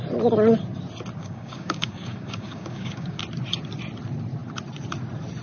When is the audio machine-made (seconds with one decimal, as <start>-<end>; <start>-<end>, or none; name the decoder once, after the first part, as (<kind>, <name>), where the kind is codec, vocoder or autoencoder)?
1.2-3.2 (codec, DAC)

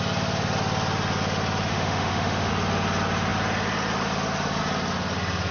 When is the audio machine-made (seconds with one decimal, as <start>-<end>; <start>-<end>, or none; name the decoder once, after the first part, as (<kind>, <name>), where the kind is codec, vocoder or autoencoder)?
1.7-2.5 (autoencoder, DAC-VAE)

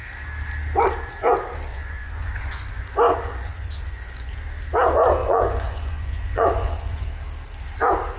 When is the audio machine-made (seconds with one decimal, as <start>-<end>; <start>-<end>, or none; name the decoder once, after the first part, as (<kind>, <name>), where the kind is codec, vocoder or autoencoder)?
1.7-4.3 (vocoder, Vocos); 5.2-7.1

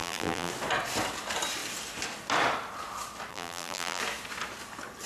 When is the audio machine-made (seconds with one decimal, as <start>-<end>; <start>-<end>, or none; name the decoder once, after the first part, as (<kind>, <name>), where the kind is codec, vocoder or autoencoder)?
0.0-0.5 (vocoder, BigVGAN v2); 3.3-4.0

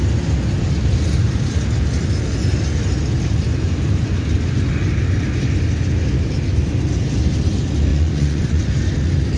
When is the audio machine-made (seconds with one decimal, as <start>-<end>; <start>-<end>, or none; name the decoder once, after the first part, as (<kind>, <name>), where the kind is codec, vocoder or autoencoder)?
7.9-8.6 (vocoder, Vocos)

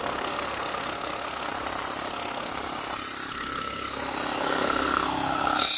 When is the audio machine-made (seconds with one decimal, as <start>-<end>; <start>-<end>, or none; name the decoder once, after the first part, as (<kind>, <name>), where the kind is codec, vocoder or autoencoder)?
0.0-1.5 (codec, SNAC); 2.1-2.5; 3.3-5.8

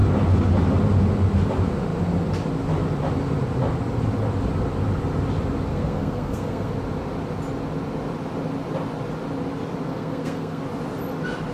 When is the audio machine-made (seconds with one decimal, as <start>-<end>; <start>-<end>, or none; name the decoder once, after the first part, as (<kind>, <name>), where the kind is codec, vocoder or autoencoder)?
5.7-6.7 (codec, SNAC); 9.9-10.6

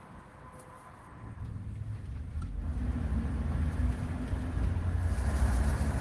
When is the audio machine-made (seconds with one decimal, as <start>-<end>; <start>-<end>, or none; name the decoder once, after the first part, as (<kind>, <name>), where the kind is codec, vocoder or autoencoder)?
none